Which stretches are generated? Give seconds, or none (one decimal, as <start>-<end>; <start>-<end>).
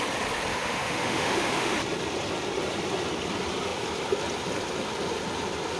0.5-1.8